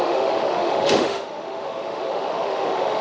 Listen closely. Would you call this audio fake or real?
fake